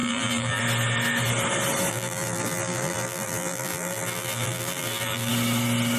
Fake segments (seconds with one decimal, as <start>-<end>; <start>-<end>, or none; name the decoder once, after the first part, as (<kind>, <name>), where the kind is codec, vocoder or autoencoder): 0.0-0.6 (vocoder, BigVGAN v2); 1.9-5.3